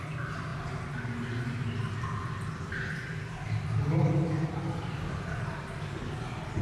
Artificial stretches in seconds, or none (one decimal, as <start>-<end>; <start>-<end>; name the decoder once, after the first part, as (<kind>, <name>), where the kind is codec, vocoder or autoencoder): none